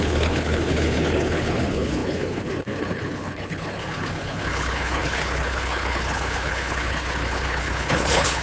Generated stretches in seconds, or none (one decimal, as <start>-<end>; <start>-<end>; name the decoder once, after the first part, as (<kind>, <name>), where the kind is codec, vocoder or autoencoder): 0.0-8.4 (codec, HILCodec)